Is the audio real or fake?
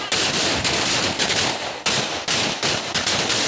real